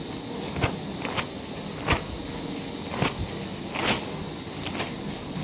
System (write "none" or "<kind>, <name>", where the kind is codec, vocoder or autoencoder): none